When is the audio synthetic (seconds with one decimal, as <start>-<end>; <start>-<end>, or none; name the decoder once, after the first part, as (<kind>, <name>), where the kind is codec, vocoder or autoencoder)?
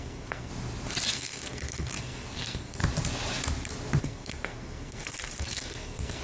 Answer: 0.0-0.5 (codec, SNAC); 1.1-2.8; 4.0-6.2